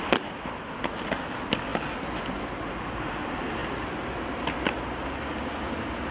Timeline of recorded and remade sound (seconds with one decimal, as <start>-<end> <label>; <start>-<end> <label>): 0.0-6.1 recorded